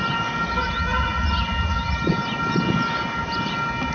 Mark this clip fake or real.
real